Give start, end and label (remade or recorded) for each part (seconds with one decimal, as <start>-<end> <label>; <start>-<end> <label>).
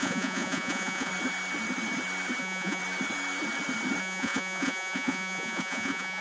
0.0-1.1 remade; 1.1-2.4 recorded; 2.4-2.8 remade; 2.8-4.0 recorded; 4.0-6.2 remade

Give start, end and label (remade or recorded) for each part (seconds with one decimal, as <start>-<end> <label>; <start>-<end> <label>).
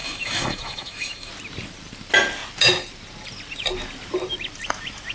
0.0-1.3 remade; 1.3-5.1 recorded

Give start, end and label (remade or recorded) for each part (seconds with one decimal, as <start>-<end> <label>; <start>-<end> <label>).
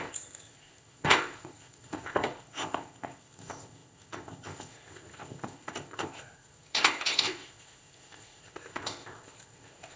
0.0-10.0 remade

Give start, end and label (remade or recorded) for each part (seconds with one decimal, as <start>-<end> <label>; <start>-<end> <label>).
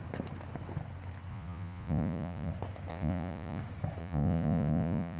0.0-1.3 recorded; 1.3-2.5 remade; 2.5-2.9 recorded; 2.9-3.6 remade; 3.6-4.0 recorded; 4.0-5.2 remade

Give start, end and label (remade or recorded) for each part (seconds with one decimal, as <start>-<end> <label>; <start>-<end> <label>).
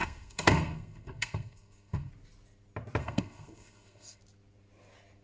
0.0-2.1 remade; 2.1-3.0 recorded; 3.0-4.2 remade; 4.2-5.2 recorded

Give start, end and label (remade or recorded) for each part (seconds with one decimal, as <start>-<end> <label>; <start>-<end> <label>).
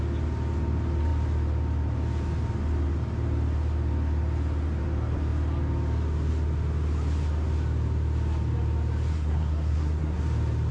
0.0-9.1 recorded; 9.1-10.2 remade; 10.2-10.7 recorded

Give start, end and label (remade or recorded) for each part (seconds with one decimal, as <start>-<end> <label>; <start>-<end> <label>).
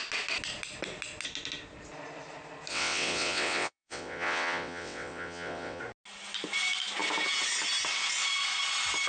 0.0-2.7 recorded; 2.7-5.8 remade; 5.8-9.1 recorded